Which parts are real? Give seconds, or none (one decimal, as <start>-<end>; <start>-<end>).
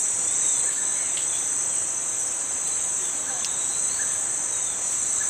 0.7-5.3